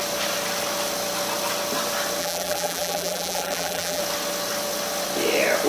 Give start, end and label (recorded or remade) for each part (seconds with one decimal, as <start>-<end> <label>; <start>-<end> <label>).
0.0-2.2 recorded; 2.2-4.0 remade; 4.0-5.7 recorded